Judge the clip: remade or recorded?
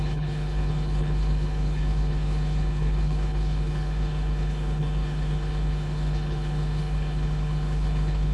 remade